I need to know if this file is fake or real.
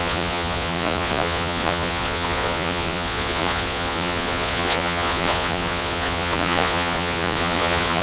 fake